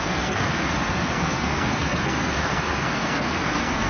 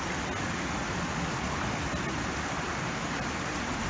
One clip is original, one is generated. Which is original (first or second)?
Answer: second